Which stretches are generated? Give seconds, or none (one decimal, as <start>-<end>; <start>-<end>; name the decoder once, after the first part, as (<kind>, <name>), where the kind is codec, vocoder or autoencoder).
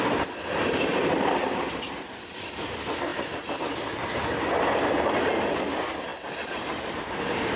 none